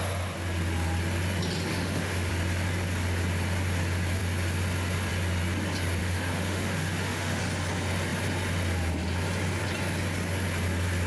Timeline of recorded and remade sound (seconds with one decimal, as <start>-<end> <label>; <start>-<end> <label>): 0.0-1.7 recorded; 1.7-2.3 remade; 2.3-6.0 recorded; 6.0-7.4 remade; 7.4-11.1 recorded